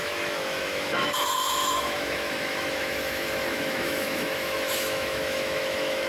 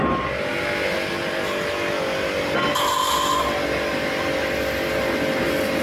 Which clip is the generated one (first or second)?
first